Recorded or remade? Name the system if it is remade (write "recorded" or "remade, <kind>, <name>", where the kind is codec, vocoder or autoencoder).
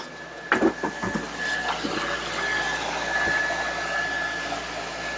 recorded